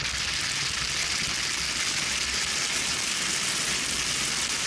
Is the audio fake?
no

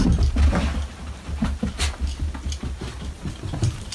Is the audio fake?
no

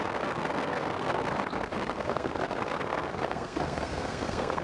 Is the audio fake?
yes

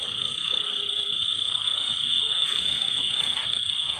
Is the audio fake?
yes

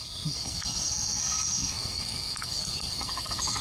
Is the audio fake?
yes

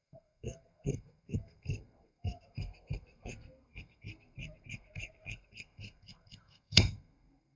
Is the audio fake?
yes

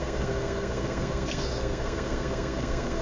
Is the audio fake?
yes